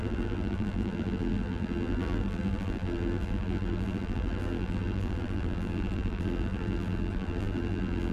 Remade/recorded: remade